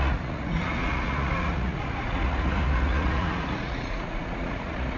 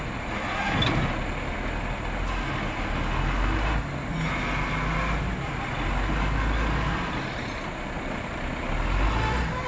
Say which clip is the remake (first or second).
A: first